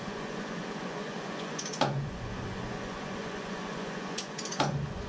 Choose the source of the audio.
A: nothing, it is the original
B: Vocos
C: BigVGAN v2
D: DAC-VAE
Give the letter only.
B